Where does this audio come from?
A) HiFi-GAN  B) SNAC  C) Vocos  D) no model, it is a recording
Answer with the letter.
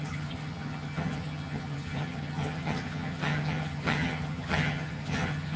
A